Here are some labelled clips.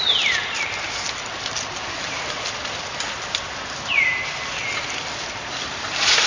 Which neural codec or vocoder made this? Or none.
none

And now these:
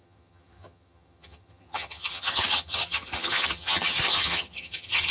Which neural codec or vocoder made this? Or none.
vocoder, HiFi-GAN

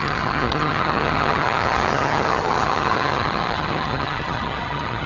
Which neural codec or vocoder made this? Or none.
vocoder, HiFi-GAN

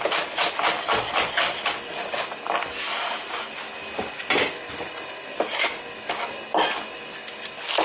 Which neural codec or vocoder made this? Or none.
none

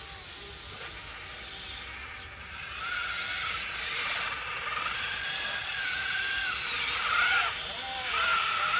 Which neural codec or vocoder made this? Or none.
none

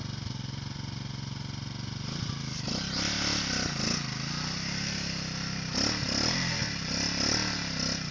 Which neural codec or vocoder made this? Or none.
none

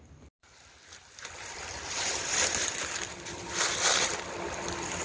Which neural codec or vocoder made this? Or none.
none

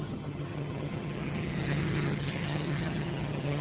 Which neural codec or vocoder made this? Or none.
vocoder, HiFi-GAN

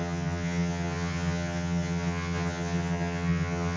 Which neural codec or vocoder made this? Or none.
vocoder, HiFi-GAN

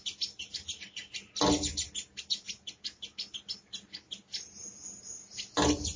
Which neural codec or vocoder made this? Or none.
none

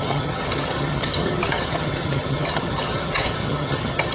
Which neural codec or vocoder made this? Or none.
vocoder, HiFi-GAN